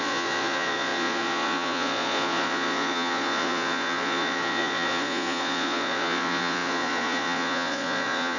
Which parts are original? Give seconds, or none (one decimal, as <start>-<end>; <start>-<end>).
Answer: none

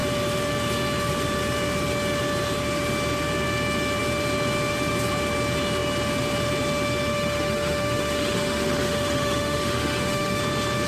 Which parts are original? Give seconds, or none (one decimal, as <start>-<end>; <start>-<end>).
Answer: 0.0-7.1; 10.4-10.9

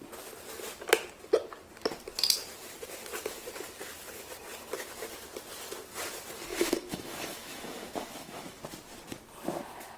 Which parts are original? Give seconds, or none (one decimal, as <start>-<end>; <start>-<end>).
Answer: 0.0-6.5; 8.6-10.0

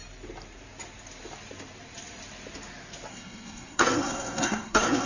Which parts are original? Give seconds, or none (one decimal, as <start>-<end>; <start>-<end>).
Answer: 0.0-3.1

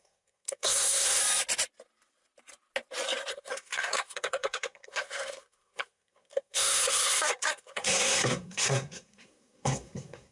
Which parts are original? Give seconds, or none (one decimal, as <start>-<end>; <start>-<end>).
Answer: 1.2-3.3

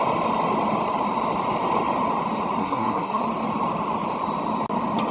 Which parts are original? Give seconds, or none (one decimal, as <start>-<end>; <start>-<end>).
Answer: 0.0-2.6; 3.2-5.1

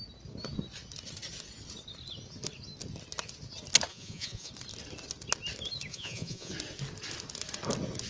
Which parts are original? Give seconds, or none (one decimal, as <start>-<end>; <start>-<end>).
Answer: 0.0-3.9; 4.5-5.9; 6.5-8.1

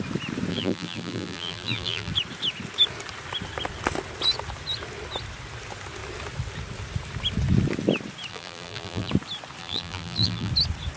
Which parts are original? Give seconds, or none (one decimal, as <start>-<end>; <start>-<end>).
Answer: 0.0-0.5; 2.1-8.3; 9.1-9.6; 10.5-11.0